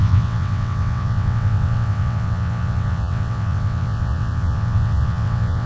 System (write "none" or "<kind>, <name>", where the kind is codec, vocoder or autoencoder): vocoder, WaveNeXt